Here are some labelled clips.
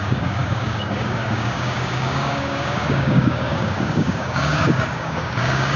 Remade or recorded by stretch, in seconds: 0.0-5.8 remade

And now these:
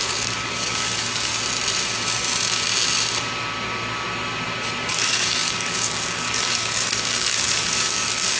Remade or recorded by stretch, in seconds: 0.0-1.3 remade; 1.3-4.9 recorded; 4.9-8.4 remade

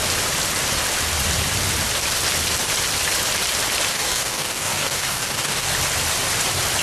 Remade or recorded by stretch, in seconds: 0.0-3.9 recorded; 3.9-5.7 remade; 5.7-6.8 recorded